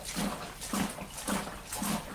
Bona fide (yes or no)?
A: yes